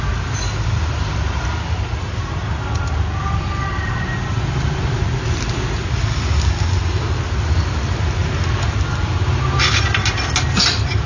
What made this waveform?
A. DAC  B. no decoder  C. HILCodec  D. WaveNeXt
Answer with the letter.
B